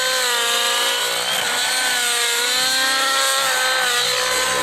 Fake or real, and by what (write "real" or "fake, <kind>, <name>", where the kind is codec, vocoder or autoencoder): real